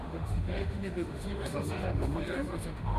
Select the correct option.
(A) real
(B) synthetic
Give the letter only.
B